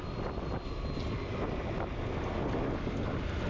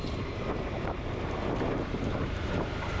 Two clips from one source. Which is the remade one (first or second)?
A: second